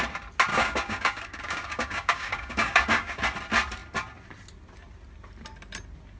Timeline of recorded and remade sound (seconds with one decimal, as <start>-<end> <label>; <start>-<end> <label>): 0.0-0.5 recorded; 0.5-3.2 remade; 3.2-6.2 recorded